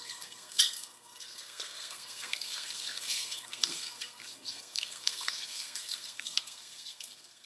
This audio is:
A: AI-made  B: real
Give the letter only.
A